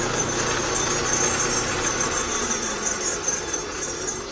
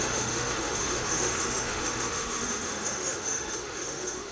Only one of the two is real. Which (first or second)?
first